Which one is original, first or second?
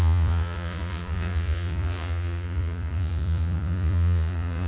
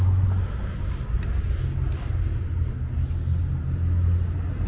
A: second